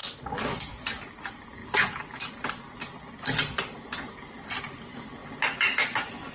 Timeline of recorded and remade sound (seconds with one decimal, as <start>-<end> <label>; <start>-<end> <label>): 0.0-0.5 remade; 0.5-1.6 recorded; 1.6-4.6 remade; 4.6-6.3 recorded